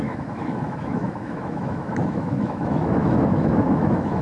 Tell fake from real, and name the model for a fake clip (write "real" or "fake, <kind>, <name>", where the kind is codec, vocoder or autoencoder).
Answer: fake, autoencoder, DAC-VAE